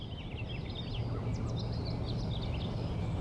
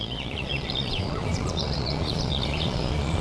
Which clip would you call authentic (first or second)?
first